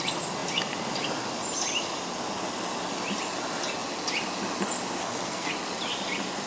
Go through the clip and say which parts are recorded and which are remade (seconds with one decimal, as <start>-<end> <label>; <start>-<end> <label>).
0.0-5.0 recorded; 5.0-5.5 remade; 5.5-6.5 recorded

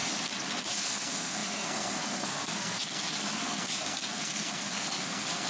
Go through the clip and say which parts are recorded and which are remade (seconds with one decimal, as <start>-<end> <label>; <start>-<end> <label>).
0.0-0.8 recorded; 0.8-5.5 remade

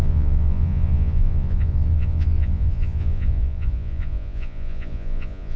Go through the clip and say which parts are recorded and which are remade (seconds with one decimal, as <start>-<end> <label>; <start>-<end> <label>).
0.0-5.6 remade

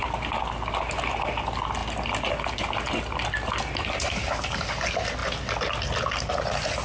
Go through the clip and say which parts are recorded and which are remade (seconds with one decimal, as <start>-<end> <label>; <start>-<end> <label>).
0.0-6.8 recorded

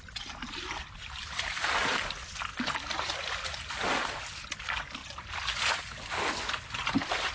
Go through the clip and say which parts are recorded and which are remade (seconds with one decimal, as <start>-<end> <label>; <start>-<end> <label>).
0.0-7.3 recorded